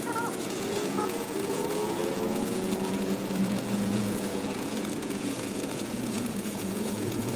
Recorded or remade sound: remade